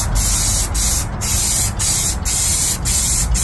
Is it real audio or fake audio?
real